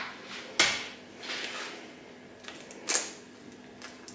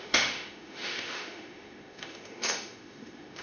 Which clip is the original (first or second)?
first